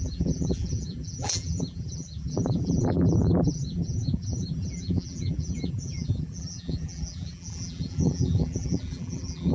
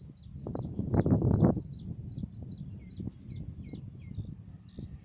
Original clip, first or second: second